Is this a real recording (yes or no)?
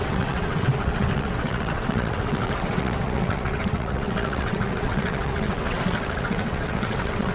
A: no